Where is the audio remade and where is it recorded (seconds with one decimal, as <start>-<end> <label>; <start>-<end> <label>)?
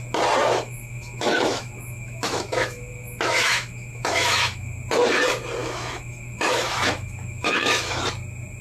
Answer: 0.0-0.4 recorded; 0.4-4.8 remade; 4.8-5.6 recorded; 5.6-8.0 remade; 8.0-8.6 recorded